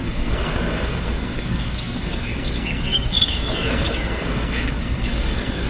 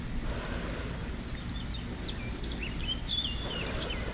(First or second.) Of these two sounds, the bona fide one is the second